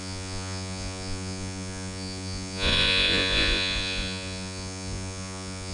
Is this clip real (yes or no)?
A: no